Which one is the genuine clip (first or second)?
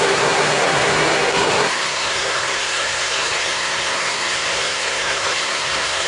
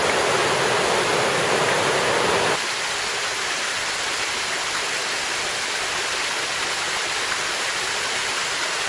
second